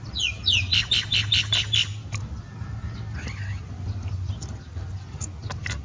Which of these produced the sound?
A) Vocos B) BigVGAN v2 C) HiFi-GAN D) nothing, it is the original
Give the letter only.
D